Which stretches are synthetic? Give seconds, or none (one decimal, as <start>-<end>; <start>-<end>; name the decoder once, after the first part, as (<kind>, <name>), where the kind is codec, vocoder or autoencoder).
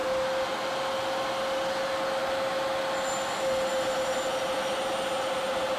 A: none